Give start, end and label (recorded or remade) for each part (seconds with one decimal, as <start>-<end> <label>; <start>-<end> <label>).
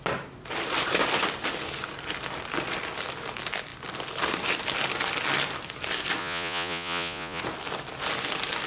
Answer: 0.0-6.2 recorded; 6.2-7.4 remade; 7.4-8.7 recorded